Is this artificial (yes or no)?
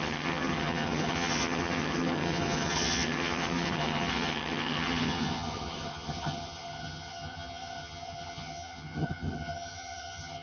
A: yes